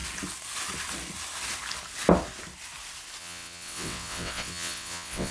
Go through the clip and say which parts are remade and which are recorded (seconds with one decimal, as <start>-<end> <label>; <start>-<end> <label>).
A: 0.0-3.2 recorded; 3.2-5.3 remade